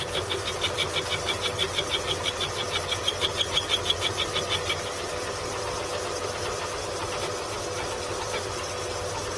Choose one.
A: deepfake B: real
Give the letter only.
B